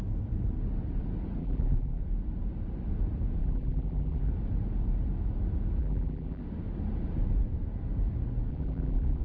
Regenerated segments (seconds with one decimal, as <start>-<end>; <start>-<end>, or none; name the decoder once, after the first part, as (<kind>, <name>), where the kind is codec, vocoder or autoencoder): 1.4-2.0 (vocoder, BigVGAN v2); 3.4-4.3; 5.8-6.4; 8.5-9.2